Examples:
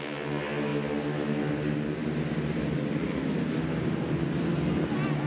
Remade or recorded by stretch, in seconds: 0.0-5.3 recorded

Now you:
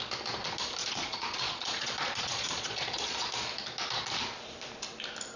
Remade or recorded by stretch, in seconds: 0.0-0.8 recorded; 0.8-3.3 remade; 3.3-5.4 recorded

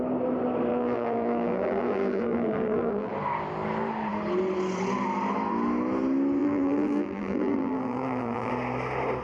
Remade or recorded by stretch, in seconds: 0.0-0.7 recorded; 0.7-3.1 remade; 3.1-6.4 recorded; 6.4-8.5 remade; 8.5-9.2 recorded

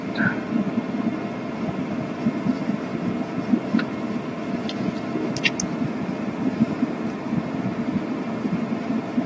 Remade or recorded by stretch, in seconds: 0.0-9.3 recorded

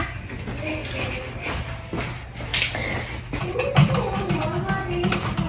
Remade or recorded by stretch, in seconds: 0.0-3.8 recorded; 3.8-4.3 remade; 4.3-5.5 recorded

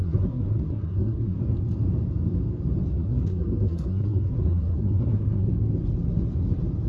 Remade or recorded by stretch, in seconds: 0.0-1.4 remade; 1.4-2.9 recorded; 2.9-5.5 remade; 5.5-6.9 recorded